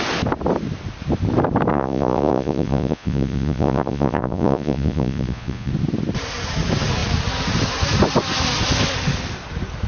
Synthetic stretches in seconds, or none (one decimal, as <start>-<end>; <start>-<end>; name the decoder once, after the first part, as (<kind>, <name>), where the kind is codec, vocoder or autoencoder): 1.7-5.7 (vocoder, Vocos)